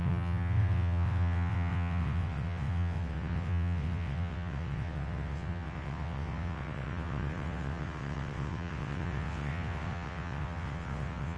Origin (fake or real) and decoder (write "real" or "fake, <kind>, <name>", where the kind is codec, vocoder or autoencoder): fake, vocoder, WaveNeXt